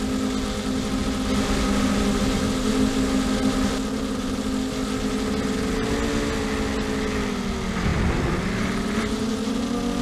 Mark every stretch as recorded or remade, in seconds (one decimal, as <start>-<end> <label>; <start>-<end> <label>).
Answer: 0.0-10.0 recorded